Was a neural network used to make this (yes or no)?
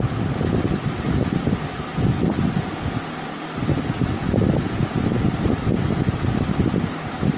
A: no